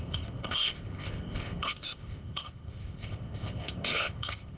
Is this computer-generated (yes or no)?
yes